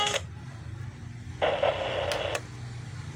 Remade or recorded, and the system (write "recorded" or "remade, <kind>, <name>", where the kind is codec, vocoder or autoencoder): recorded